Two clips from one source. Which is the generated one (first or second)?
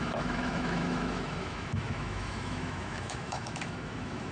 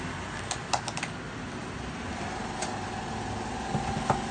first